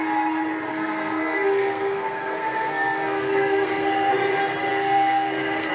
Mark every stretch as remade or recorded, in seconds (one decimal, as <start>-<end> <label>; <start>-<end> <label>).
0.0-0.7 recorded; 0.7-4.1 remade; 4.1-4.7 recorded; 4.7-5.7 remade